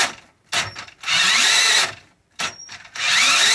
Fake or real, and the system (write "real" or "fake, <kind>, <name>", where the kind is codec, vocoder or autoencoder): real